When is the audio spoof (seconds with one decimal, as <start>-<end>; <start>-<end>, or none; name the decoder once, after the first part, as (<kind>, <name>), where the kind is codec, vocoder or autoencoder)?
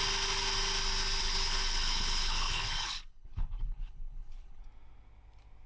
1.2-4.6 (codec, HILCodec)